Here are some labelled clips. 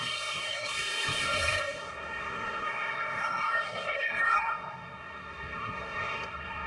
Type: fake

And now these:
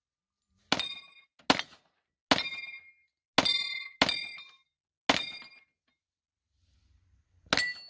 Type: real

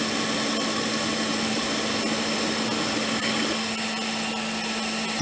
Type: real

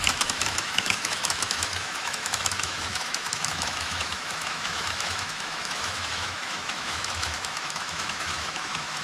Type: fake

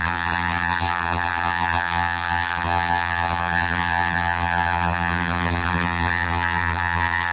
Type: fake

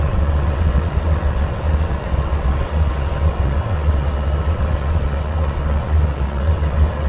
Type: fake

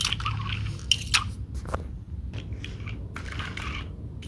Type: real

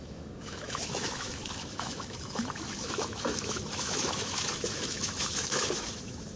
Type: fake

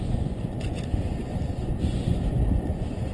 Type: fake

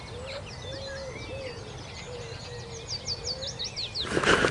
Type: real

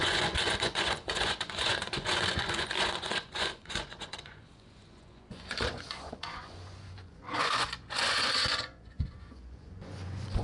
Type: fake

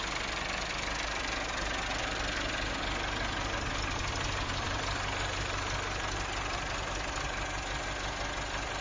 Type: real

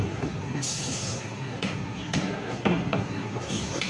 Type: fake